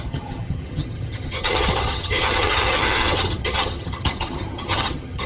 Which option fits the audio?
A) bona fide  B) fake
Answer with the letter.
B